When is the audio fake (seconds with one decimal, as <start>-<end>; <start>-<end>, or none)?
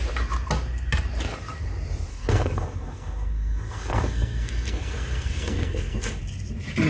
2.1-6.2